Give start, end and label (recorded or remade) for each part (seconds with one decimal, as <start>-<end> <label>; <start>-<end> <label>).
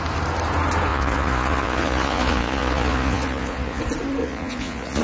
0.0-0.9 recorded; 0.9-3.8 remade; 3.8-4.2 recorded; 4.2-5.0 remade